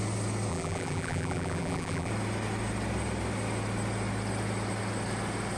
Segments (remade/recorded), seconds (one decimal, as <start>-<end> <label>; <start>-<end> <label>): 0.0-0.5 recorded; 0.5-2.1 remade; 2.1-5.6 recorded